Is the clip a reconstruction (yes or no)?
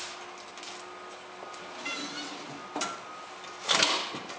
no